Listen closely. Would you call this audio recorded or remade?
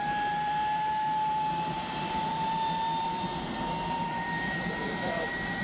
remade